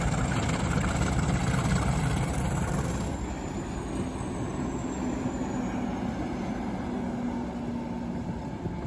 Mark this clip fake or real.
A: real